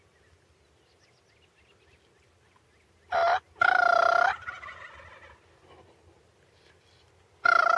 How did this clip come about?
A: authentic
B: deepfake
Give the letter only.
A